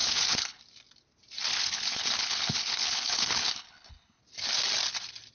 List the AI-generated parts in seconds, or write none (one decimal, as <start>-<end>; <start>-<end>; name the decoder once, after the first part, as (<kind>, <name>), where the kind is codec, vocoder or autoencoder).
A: 0.0-0.6 (codec, HILCodec); 1.5-4.2